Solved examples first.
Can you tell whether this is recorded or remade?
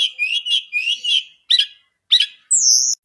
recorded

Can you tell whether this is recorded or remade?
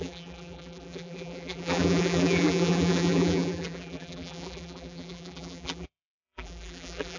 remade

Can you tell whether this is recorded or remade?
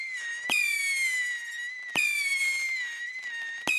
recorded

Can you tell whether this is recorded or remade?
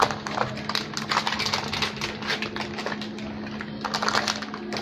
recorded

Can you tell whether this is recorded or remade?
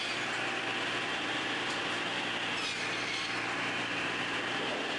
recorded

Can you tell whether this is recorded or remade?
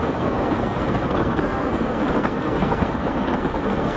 remade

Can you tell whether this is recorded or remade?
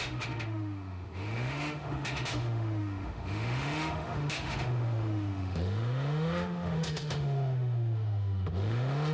remade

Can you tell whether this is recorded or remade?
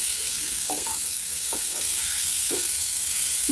remade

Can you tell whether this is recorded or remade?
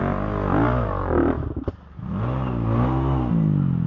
recorded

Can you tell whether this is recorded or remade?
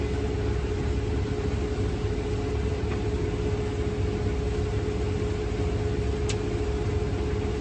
recorded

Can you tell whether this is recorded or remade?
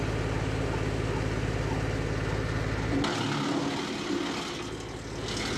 recorded